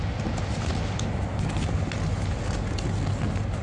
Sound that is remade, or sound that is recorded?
recorded